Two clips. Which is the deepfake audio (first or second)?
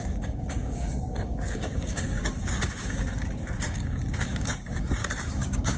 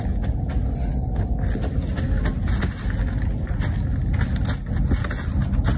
first